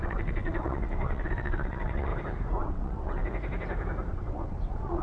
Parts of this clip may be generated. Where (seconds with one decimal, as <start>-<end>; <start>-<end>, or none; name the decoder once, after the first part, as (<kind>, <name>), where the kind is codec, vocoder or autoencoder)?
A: 0.0-2.1 (vocoder, WaveNeXt); 2.6-3.2; 4.1-5.0